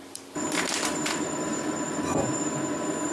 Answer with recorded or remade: remade